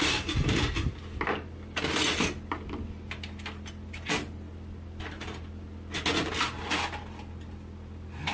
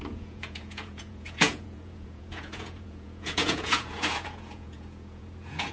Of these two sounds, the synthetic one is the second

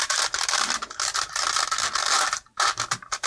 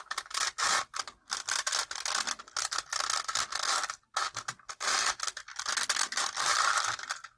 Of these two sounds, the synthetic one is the first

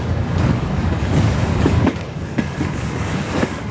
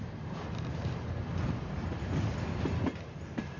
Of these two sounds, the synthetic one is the first